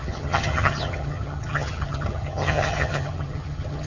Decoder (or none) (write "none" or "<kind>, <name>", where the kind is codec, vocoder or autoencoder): vocoder, HiFi-GAN